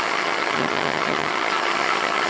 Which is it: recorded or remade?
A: remade